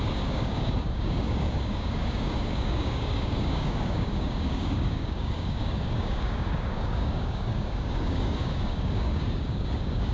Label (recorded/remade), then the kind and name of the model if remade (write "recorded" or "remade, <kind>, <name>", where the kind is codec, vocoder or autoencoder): remade, codec, DAC